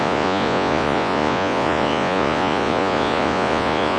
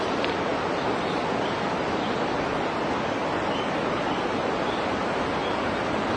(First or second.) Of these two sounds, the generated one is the first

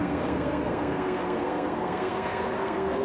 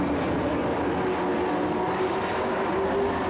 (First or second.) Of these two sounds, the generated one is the first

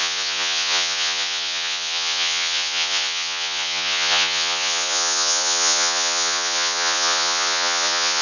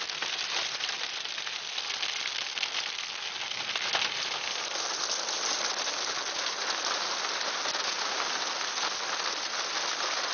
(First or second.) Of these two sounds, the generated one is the first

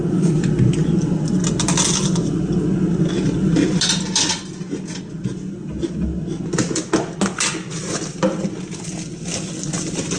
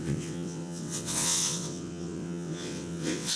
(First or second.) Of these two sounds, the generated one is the second